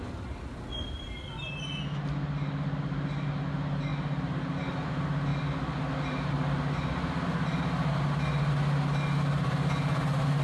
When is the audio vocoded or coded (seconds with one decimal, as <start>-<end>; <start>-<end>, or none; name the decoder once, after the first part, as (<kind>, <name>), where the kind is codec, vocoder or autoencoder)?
none